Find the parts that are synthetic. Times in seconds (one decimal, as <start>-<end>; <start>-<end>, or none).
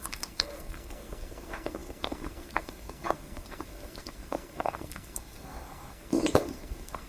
0.0-7.1